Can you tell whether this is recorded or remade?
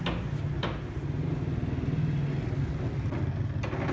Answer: recorded